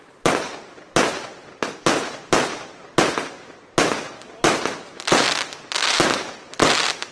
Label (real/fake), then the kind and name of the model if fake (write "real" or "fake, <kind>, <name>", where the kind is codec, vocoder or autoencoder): real